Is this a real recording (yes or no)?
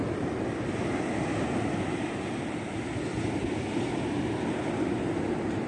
yes